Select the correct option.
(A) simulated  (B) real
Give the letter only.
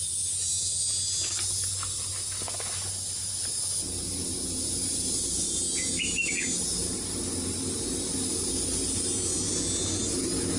B